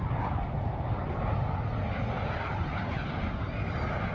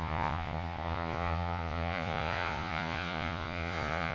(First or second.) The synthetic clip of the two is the second